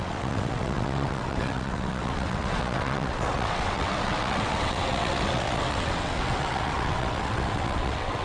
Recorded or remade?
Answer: remade